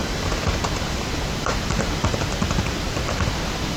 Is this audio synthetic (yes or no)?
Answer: yes